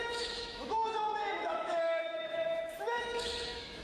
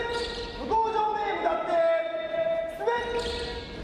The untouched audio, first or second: second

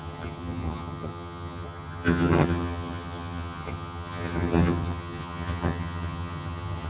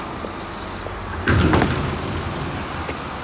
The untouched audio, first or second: second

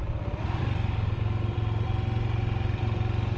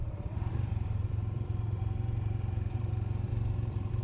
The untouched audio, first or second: first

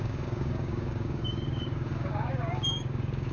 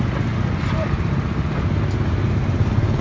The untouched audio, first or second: second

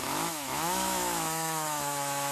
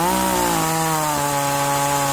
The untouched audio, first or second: second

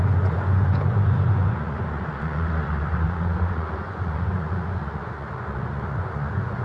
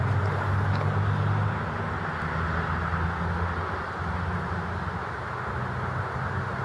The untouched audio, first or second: second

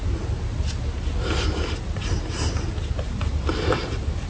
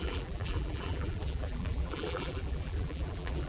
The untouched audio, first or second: first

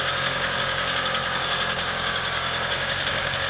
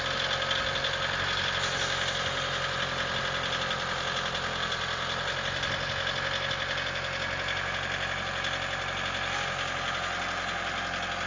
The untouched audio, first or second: second